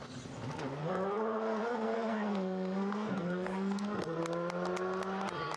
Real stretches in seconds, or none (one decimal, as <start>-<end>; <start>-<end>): 0.0-0.8; 4.2-5.6